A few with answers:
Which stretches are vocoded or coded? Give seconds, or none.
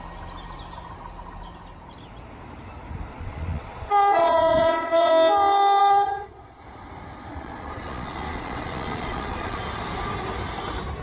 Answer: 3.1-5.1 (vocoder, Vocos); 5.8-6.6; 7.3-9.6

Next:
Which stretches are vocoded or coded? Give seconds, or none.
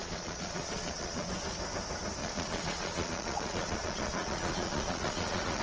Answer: 0.0-1.3 (vocoder, Vocos); 2.2-5.6